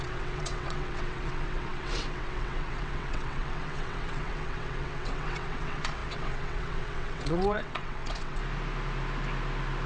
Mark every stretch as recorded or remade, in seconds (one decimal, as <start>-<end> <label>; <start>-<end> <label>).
0.0-8.4 remade; 8.4-9.9 recorded